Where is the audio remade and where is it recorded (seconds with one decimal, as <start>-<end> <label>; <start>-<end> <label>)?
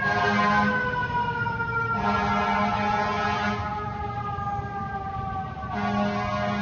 0.0-6.6 recorded